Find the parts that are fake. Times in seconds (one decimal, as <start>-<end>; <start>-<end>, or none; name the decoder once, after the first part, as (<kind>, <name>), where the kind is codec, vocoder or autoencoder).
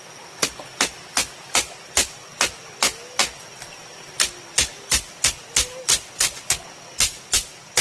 none